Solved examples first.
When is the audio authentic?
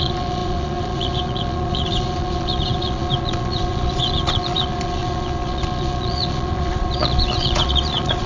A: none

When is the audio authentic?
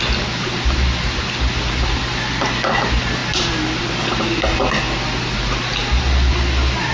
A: 0.0-6.9